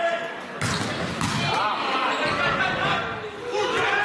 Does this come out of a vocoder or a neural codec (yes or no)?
no